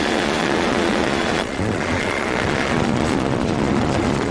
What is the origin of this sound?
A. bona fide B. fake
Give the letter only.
B